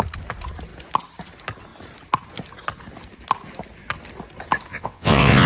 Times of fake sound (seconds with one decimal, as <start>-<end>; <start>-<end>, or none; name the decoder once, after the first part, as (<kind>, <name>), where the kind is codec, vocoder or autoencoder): 4.7-5.5 (vocoder, WaveNeXt)